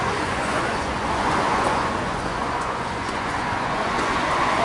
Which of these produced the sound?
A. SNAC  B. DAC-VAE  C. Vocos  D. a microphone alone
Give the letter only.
C